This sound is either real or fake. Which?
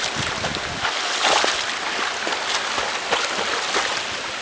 real